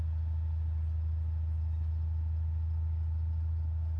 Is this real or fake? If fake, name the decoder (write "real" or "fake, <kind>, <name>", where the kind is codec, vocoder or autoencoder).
real